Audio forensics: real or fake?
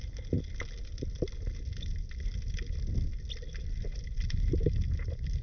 real